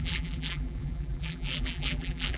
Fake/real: fake